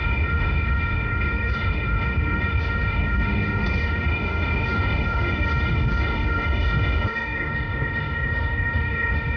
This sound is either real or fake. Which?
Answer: fake